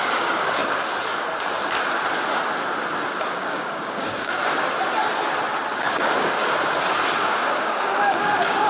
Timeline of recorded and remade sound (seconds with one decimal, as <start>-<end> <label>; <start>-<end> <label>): 0.0-0.6 remade; 0.6-3.2 recorded; 3.2-4.4 remade; 4.4-5.8 recorded; 5.8-6.4 remade; 6.4-7.2 recorded; 7.2-8.7 remade